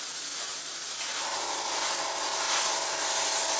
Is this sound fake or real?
real